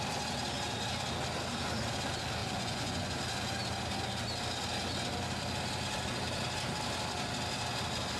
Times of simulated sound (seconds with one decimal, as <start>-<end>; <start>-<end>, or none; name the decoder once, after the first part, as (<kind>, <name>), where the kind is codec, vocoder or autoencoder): 2.4-3.1 (vocoder, Vocos)